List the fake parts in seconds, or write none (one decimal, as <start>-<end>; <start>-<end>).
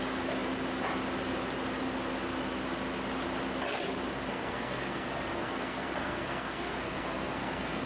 4.3-7.9